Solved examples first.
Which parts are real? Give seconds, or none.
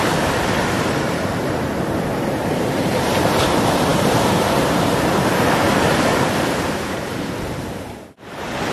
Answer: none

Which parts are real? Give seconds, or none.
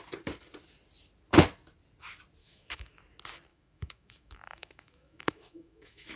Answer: 0.0-2.4; 3.0-3.5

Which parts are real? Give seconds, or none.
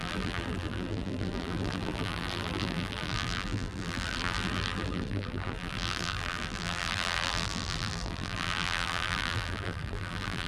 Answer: none